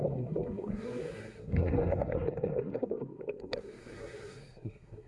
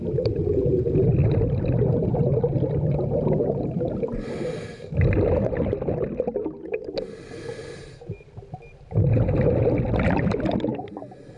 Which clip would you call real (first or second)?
second